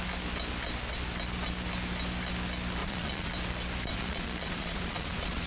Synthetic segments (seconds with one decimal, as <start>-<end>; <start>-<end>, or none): 2.8-3.3; 3.9-5.5